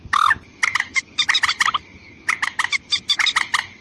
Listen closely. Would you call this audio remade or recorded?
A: recorded